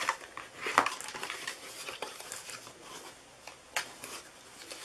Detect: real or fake real